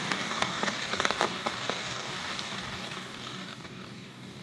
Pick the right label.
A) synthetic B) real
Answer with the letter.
A